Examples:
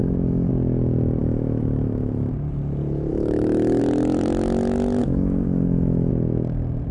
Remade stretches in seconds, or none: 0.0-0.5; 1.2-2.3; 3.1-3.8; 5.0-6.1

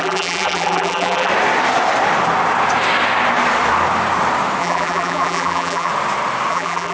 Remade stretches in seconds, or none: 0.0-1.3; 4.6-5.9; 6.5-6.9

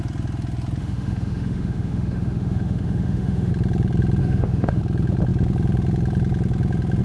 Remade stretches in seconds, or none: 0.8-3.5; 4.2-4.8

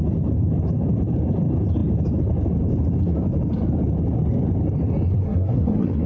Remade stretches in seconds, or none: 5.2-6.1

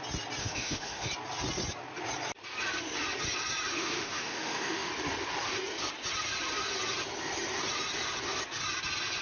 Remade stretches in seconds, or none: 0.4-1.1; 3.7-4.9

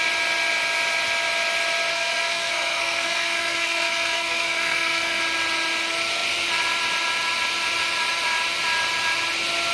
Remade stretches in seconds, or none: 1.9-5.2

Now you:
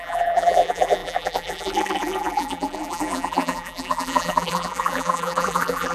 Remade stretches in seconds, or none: 0.0-5.9